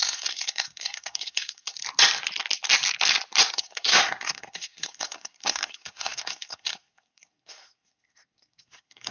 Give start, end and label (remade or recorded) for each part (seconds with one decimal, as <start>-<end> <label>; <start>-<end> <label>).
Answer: 0.0-1.8 remade; 1.8-3.5 recorded; 3.5-9.1 remade